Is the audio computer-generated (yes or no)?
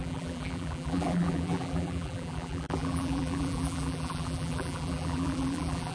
yes